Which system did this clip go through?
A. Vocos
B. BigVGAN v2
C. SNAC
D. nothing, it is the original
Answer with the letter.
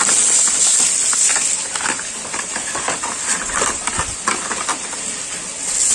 D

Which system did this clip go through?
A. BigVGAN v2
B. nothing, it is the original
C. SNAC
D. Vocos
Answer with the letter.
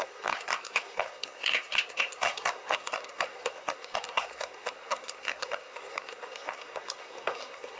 C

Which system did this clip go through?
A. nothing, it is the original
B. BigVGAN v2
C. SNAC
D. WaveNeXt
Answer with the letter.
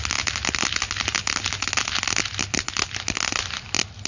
A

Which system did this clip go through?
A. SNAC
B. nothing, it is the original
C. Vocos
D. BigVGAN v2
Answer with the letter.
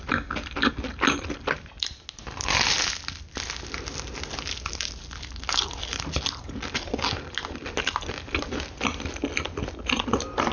B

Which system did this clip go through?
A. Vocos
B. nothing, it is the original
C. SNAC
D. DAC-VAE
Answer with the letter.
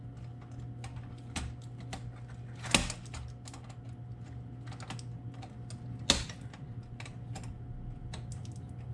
B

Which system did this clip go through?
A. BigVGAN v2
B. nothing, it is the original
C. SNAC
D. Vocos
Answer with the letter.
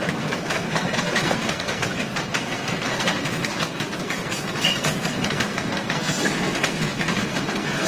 C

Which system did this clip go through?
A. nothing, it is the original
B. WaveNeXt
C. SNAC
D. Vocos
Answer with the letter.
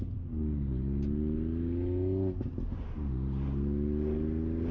A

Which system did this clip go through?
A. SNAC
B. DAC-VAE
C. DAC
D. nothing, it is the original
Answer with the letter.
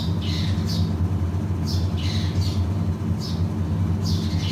D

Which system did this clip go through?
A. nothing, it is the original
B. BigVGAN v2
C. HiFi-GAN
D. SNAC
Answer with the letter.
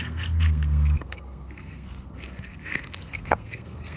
D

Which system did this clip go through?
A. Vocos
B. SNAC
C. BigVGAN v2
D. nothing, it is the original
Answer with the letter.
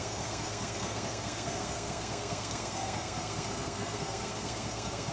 B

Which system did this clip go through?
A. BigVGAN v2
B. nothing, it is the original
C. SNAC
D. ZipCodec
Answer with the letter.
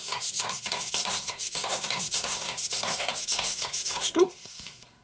C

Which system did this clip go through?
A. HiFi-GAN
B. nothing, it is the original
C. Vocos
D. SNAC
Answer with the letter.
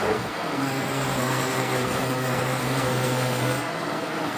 D